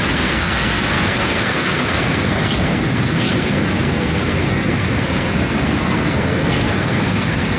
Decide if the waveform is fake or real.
fake